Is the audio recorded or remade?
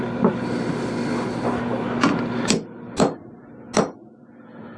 recorded